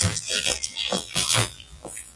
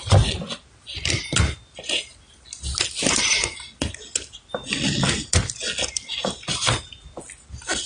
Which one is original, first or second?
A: second